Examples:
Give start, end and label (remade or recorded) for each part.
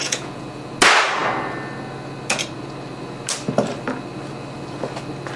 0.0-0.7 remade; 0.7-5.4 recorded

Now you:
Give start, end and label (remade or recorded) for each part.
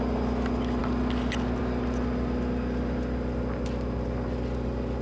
0.0-5.0 recorded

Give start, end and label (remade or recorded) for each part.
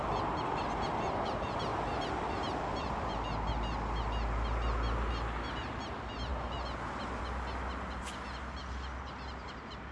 0.0-9.9 recorded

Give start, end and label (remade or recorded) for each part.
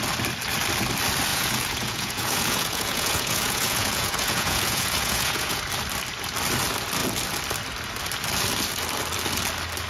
0.0-1.3 recorded; 1.3-5.6 remade; 5.6-9.9 recorded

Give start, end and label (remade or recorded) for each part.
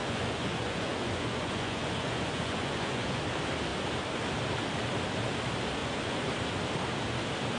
0.0-3.2 remade; 3.2-5.8 recorded; 5.8-6.3 remade; 6.3-7.6 recorded